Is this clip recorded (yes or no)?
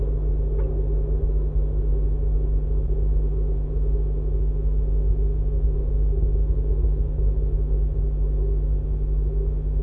yes